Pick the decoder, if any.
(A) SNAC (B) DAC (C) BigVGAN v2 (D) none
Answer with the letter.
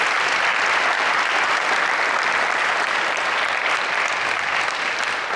C